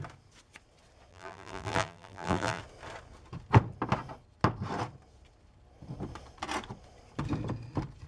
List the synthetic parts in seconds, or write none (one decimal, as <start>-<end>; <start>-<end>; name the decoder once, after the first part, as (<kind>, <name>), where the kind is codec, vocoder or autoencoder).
1.1-2.6 (vocoder, BigVGAN v2)